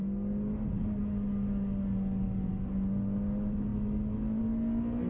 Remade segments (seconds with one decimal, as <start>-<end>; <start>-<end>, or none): none